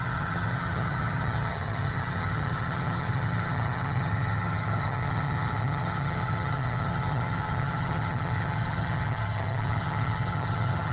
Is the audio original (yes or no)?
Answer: no